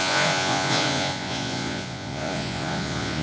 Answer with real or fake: fake